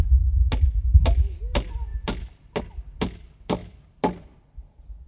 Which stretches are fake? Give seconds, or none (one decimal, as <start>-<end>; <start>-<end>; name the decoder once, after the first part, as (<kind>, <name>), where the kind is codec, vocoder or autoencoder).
none